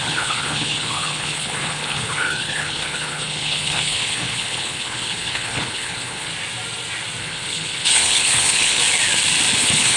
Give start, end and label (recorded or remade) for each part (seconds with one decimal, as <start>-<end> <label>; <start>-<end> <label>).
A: 0.0-6.3 remade; 6.3-7.2 recorded; 7.2-8.8 remade; 8.8-9.6 recorded; 9.6-10.0 remade

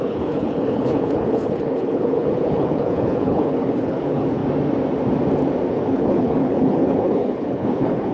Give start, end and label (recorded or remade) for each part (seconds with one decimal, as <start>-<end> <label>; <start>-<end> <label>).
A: 0.0-4.4 remade; 4.4-5.7 recorded; 5.7-8.1 remade

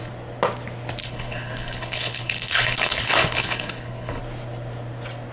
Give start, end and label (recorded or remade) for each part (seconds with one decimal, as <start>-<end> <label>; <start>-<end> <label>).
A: 0.0-1.0 recorded; 1.0-4.2 remade; 4.2-5.3 recorded

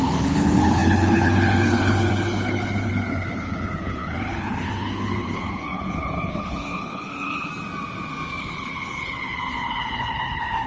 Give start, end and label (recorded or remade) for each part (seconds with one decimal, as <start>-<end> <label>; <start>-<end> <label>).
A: 0.0-7.5 remade; 7.5-8.4 recorded; 8.4-10.7 remade

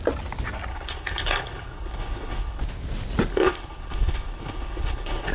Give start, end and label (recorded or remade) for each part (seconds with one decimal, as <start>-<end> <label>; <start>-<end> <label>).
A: 0.0-0.7 recorded; 0.7-2.6 remade; 2.6-3.3 recorded; 3.3-5.3 remade

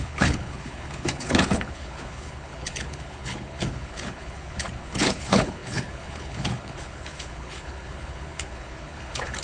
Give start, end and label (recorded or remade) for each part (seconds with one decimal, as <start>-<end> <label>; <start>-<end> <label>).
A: 0.0-9.4 remade

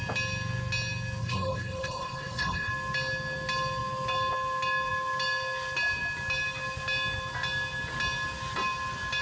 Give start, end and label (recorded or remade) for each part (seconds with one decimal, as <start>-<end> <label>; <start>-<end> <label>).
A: 0.0-1.2 recorded; 1.2-2.7 remade; 2.7-9.2 recorded